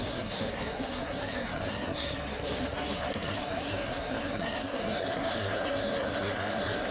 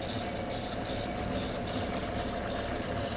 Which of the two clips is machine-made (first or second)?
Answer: first